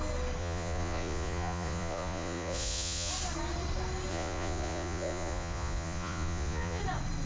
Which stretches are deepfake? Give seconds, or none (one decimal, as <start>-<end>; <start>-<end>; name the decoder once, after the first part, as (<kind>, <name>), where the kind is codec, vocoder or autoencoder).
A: 0.4-3.1 (vocoder, Vocos); 4.1-6.8